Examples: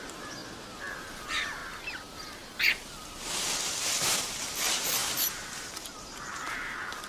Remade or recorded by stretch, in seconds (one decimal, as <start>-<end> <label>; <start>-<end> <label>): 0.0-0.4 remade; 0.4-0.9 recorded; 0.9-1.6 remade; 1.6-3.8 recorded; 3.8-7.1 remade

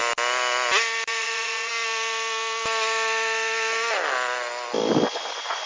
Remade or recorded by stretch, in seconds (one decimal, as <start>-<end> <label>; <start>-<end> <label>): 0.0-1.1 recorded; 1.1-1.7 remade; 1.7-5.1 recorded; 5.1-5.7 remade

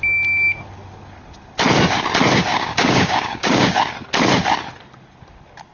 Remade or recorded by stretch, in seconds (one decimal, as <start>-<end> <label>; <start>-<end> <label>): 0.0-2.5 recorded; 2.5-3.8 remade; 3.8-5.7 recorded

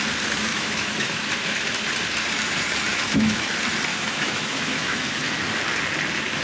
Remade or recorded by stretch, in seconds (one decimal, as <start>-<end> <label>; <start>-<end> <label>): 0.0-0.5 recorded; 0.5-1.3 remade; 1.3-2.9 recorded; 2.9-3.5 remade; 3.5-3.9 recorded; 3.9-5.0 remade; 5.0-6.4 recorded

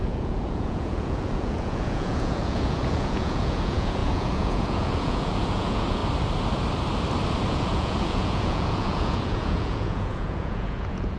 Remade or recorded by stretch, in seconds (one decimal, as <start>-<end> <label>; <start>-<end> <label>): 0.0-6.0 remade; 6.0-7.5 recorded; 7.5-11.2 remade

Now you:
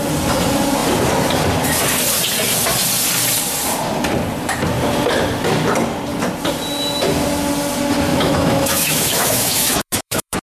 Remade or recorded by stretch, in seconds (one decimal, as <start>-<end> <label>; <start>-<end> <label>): 0.0-8.1 recorded; 8.1-10.4 remade

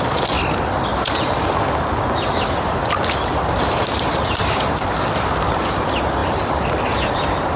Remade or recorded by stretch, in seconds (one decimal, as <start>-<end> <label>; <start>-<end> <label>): 0.0-0.9 remade; 0.9-4.3 recorded; 4.3-7.6 remade

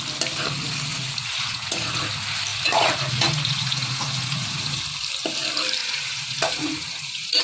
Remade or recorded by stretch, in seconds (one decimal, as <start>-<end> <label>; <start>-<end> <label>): 0.0-0.9 recorded; 0.9-2.1 remade; 2.1-2.5 recorded; 2.5-4.8 remade; 4.8-5.8 recorded; 5.8-7.4 remade